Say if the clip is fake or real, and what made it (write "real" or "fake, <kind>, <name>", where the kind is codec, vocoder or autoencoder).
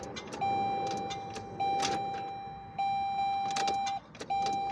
real